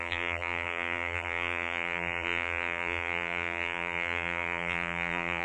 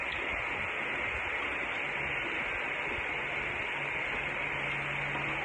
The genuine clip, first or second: second